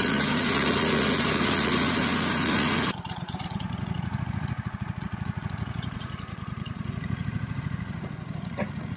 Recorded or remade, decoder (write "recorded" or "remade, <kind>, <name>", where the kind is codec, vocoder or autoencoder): remade, vocoder, Vocos